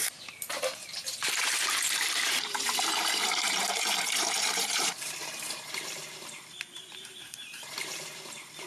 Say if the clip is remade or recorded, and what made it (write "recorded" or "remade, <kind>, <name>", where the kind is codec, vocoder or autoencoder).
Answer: remade, vocoder, BigVGAN v2